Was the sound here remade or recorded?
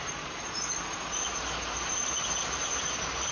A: remade